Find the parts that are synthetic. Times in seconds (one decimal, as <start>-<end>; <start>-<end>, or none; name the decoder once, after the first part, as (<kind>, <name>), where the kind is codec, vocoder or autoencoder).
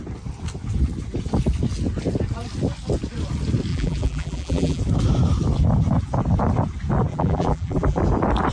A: 3.7-4.8 (vocoder, BigVGAN v2); 7.1-8.0